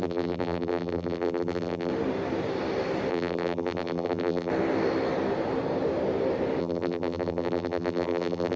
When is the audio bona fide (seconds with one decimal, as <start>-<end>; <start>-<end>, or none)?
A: 1.9-3.1; 4.5-6.6